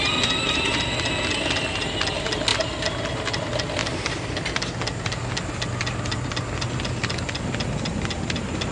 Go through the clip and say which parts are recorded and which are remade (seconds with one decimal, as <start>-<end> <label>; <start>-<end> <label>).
0.0-8.7 recorded